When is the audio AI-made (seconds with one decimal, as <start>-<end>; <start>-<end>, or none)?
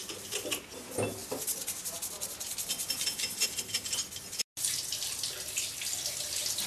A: none